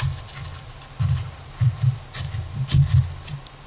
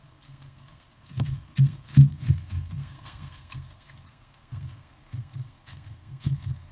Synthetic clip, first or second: second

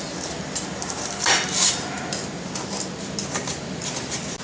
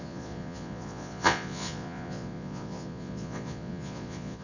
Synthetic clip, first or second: second